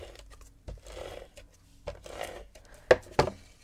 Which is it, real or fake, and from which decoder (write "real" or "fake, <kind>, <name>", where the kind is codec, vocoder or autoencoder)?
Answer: real